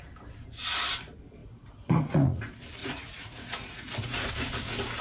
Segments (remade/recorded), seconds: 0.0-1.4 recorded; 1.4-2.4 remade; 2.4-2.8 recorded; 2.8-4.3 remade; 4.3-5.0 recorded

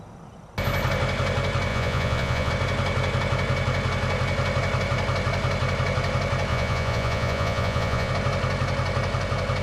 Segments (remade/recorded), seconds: 0.0-1.7 recorded; 1.7-2.5 remade; 2.5-6.5 recorded; 6.5-8.1 remade; 8.1-9.6 recorded

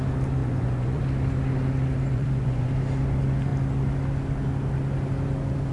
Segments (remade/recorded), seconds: 0.0-0.4 recorded; 0.4-1.0 remade; 1.0-2.1 recorded; 2.1-2.7 remade; 2.7-5.7 recorded

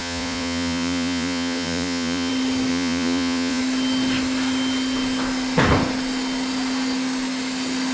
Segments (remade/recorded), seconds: 0.0-2.3 remade; 2.3-2.7 recorded; 2.7-3.6 remade; 3.6-7.9 recorded

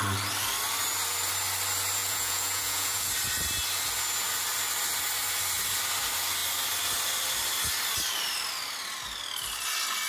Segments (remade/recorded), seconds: 0.0-2.0 recorded; 2.0-3.1 remade; 3.1-10.1 recorded

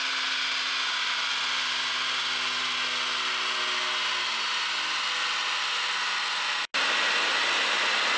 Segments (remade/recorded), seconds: 0.0-8.2 recorded